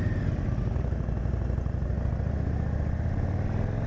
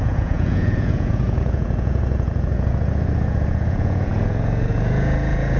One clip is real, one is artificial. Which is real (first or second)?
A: first